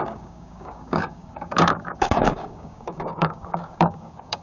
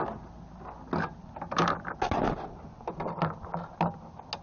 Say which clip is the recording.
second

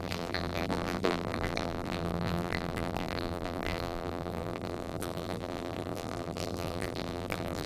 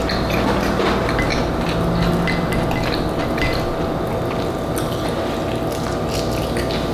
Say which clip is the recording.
second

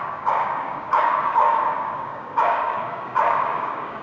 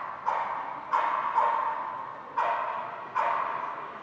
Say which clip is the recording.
second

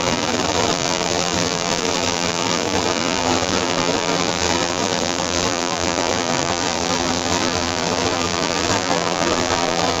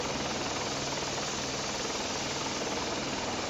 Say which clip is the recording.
second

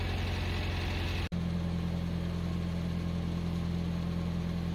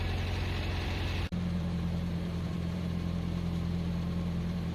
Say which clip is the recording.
first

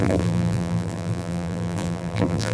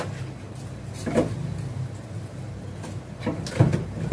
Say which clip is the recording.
second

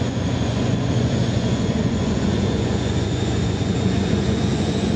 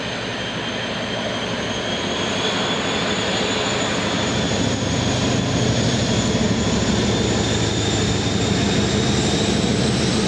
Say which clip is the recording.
second